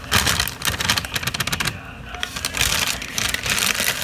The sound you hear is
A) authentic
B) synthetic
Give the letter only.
A